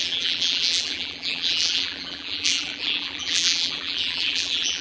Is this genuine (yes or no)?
no